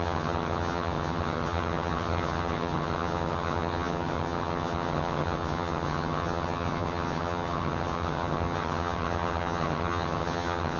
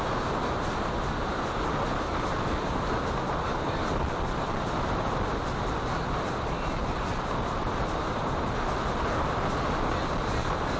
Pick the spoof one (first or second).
first